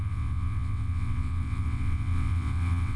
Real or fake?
fake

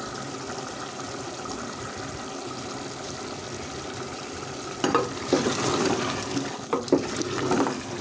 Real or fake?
real